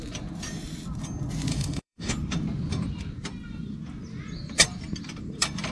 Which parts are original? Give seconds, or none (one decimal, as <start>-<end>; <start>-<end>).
0.0-1.5; 2.1-5.7